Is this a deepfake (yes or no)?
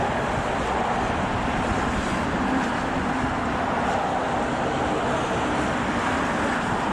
no